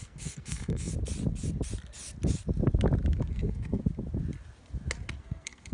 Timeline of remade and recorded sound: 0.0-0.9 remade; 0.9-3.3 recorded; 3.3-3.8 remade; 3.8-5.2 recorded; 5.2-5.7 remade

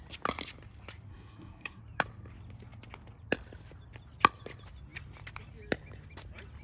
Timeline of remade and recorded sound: 0.0-1.1 recorded; 1.1-1.8 remade; 1.8-6.6 recorded

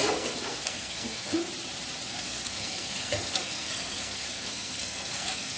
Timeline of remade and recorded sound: 0.0-1.4 remade; 1.4-2.1 recorded; 2.1-5.6 remade

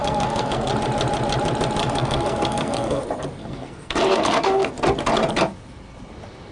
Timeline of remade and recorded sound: 0.0-0.7 remade; 0.7-1.8 recorded; 1.8-3.0 remade; 3.0-3.4 recorded; 3.4-4.7 remade; 4.7-6.5 recorded

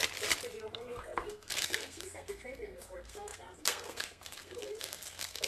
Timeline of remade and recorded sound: 0.0-0.7 recorded; 0.7-5.5 remade

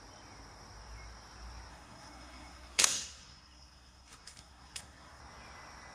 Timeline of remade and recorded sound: 0.0-1.7 recorded; 1.7-5.2 remade; 5.2-5.9 recorded

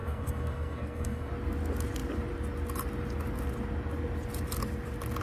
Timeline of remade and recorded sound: 0.0-1.3 remade; 1.3-5.2 recorded